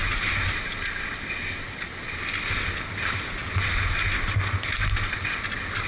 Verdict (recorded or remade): recorded